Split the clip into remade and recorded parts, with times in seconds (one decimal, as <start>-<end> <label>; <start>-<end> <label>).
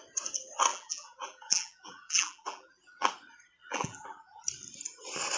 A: 0.0-0.7 recorded; 0.7-3.1 remade; 3.1-3.6 recorded; 3.6-4.4 remade; 4.4-5.4 recorded